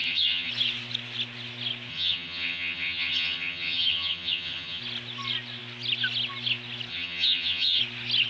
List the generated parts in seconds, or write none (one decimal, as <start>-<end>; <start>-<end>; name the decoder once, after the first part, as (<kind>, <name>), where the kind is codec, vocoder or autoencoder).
0.0-0.5 (vocoder, HiFi-GAN); 1.9-4.8; 6.9-7.8